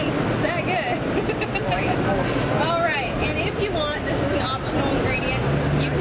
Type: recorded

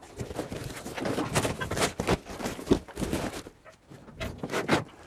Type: recorded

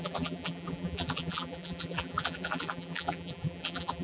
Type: remade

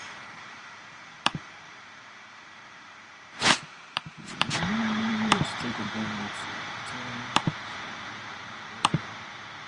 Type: remade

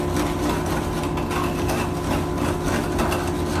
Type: recorded